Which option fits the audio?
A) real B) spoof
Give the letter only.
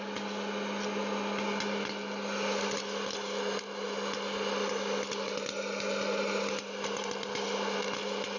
A